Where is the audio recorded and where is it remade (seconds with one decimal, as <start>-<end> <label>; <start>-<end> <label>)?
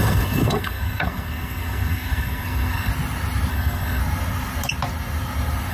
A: 0.0-2.9 remade; 2.9-3.5 recorded; 3.5-4.0 remade; 4.0-5.7 recorded